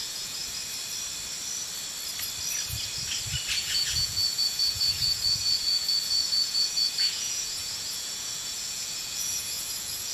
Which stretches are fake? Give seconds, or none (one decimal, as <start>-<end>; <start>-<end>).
0.0-0.4; 3.5-10.1